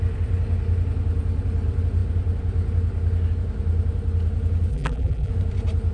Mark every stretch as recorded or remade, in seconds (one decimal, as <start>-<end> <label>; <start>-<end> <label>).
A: 0.0-4.7 recorded; 4.7-5.3 remade; 5.3-5.9 recorded